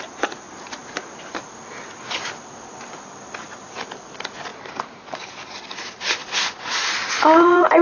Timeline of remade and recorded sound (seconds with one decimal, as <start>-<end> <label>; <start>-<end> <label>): 0.0-4.5 remade; 4.5-5.0 recorded; 5.0-7.8 remade